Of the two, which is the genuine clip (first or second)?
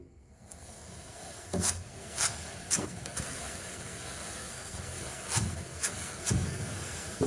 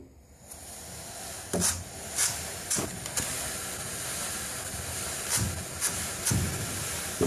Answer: second